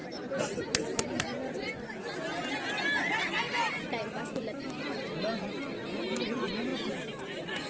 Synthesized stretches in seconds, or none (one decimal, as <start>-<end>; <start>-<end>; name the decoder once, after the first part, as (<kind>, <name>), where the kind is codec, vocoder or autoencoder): 0.0-1.7 (vocoder, BigVGAN v2); 3.5-7.7